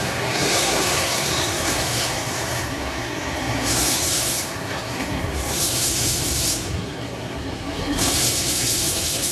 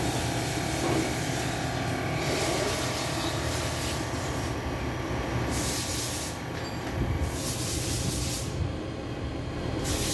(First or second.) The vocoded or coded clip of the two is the first